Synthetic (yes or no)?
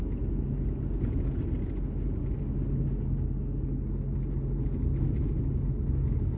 no